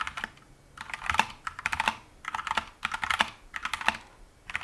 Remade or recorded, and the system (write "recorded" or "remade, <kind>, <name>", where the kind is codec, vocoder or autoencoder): recorded